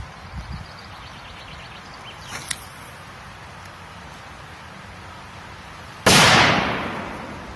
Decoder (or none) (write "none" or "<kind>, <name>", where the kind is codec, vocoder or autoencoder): none